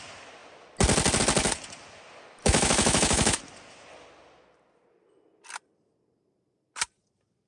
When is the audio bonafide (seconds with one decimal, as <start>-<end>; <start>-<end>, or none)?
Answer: 0.0-2.4; 3.4-7.5